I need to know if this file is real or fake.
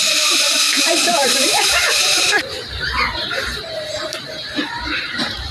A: fake